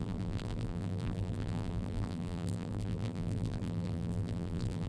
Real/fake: fake